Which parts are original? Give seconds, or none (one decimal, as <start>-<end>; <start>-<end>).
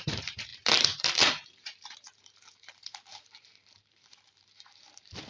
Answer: none